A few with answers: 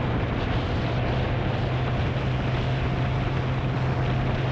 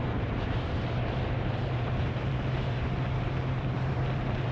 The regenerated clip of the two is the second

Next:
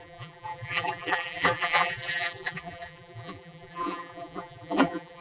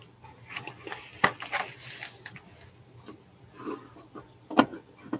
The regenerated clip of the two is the first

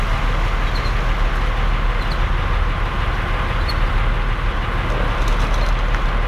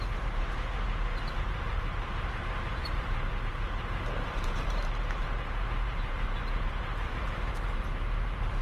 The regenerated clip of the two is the second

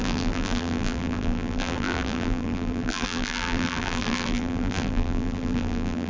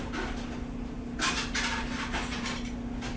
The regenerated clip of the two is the first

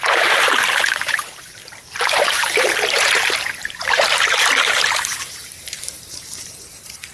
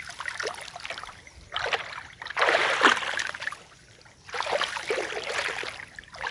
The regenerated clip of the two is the first